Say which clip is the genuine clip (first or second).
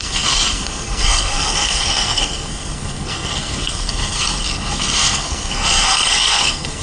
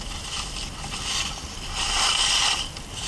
second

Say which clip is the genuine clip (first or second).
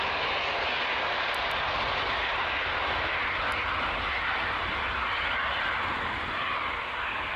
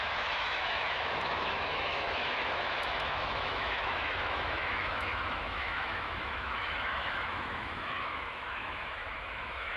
first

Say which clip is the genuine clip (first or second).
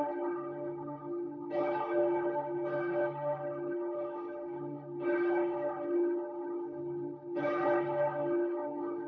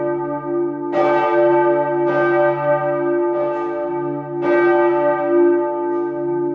second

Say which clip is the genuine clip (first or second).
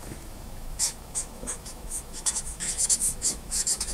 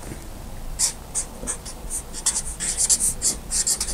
second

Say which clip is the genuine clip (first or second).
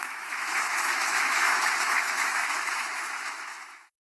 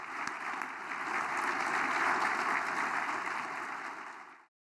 second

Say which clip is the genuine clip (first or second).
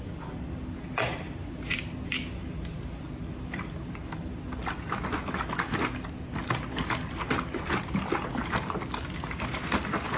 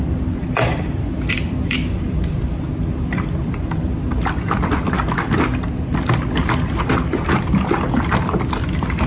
first